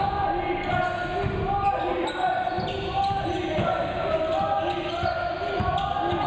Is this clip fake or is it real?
real